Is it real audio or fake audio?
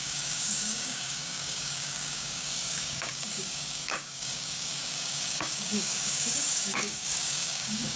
fake